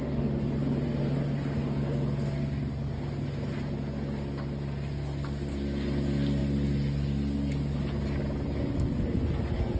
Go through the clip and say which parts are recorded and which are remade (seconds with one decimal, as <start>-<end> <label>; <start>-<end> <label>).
0.0-9.8 recorded